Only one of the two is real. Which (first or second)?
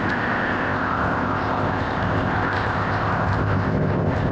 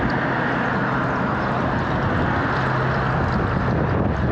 second